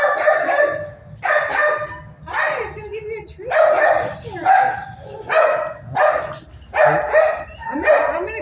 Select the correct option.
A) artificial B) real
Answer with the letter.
B